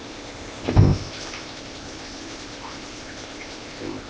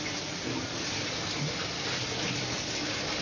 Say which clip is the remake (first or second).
first